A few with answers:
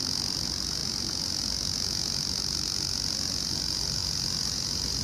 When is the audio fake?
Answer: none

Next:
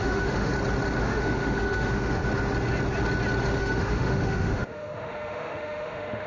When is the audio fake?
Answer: 0.0-0.5; 1.0-2.2; 3.6-6.3

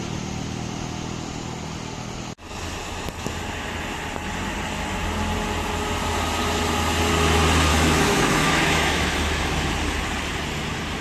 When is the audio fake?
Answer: 7.7-9.7

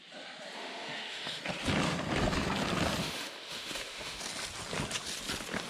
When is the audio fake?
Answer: 0.6-1.4; 3.0-4.2